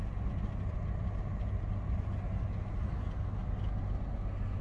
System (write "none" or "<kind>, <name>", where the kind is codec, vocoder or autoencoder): none